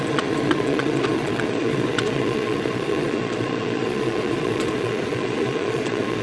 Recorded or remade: remade